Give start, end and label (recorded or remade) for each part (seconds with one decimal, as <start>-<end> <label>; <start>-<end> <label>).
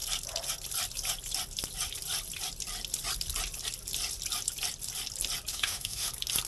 0.0-5.5 recorded; 5.5-6.1 remade; 6.1-6.5 recorded